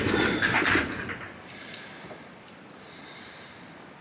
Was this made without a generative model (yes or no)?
yes